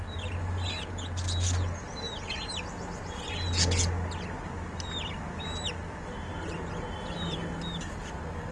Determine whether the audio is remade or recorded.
recorded